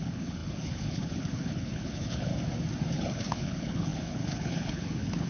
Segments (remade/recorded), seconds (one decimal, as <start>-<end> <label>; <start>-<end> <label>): 0.0-2.3 remade; 2.3-2.9 recorded; 2.9-5.3 remade